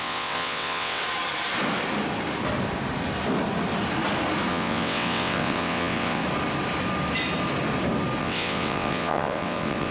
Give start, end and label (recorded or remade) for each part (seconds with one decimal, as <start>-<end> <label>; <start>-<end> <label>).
0.0-1.0 remade; 1.0-4.5 recorded; 4.5-6.2 remade; 6.2-8.2 recorded; 8.2-9.9 remade